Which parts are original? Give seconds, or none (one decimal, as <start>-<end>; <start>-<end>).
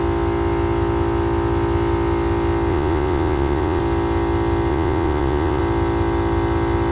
0.0-2.7; 3.8-4.7; 5.6-6.9